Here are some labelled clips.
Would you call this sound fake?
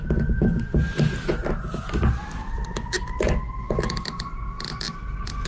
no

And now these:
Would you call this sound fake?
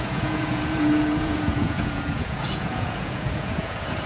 yes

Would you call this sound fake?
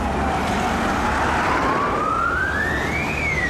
yes